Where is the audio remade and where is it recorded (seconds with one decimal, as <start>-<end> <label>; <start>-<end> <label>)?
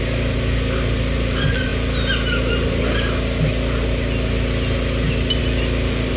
0.0-6.2 recorded